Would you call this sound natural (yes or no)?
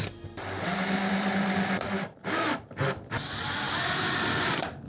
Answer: yes